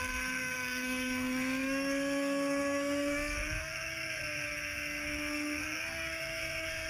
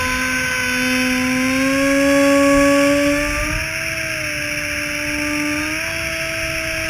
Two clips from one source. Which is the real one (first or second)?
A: second